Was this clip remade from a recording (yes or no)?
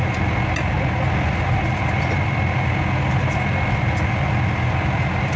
no